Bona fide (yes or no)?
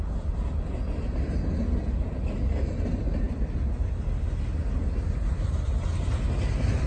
yes